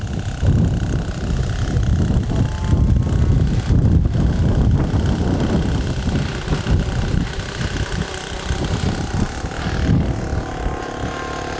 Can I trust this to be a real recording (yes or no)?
yes